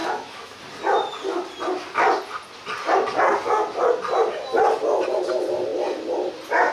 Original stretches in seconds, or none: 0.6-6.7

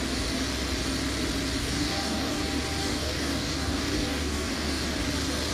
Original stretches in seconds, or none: 0.0-1.6; 2.4-2.8; 4.8-5.5

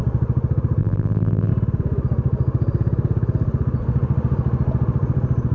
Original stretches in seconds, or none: 0.0-0.8; 1.5-5.5

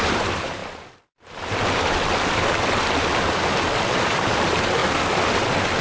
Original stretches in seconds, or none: 0.6-4.1; 4.8-5.8

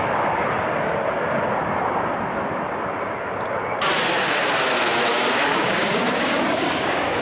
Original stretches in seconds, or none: 0.0-5.1

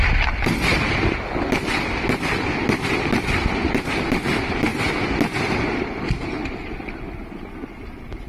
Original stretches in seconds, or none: 0.7-3.3; 4.7-5.8

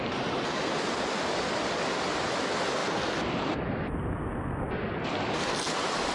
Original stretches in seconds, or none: 0.0-6.1

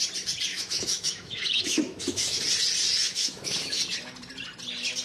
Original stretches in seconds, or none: 0.0-0.5; 2.4-3.0; 3.8-5.0